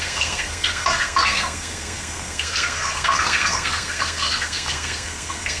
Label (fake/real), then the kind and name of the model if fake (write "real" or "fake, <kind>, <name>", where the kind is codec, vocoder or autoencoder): fake, codec, SNAC